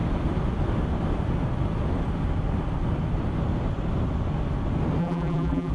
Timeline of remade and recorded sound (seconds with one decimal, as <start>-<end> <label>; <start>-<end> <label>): 0.0-5.0 recorded; 5.0-5.7 remade